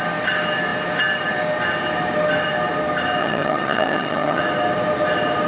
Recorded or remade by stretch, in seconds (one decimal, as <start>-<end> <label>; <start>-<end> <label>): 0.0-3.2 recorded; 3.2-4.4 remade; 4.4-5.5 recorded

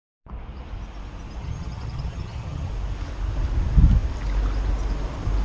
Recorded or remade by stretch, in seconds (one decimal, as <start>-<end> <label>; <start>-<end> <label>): 0.0-1.4 recorded; 1.4-2.7 remade; 2.7-5.4 recorded

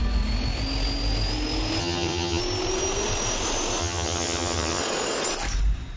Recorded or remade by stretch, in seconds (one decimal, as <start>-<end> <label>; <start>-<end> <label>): 0.0-1.8 recorded; 1.8-2.4 remade; 2.4-3.8 recorded; 3.8-4.8 remade; 4.8-6.0 recorded

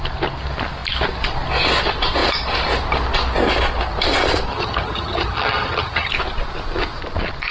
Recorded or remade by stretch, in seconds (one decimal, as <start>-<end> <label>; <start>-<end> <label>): 0.0-4.5 recorded; 4.5-6.1 remade; 6.1-7.5 recorded

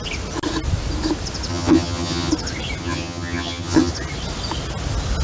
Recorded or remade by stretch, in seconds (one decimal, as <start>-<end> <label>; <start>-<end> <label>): 0.0-1.5 recorded; 1.5-2.3 remade; 2.3-2.8 recorded; 2.8-3.9 remade; 3.9-5.2 recorded